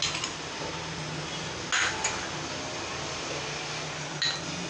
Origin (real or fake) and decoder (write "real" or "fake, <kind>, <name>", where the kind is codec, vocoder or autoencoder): real